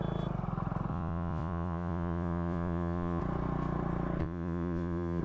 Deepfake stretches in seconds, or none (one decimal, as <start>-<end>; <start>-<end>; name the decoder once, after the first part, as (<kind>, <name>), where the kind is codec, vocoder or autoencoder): 0.9-3.2 (vocoder, Vocos); 4.2-5.2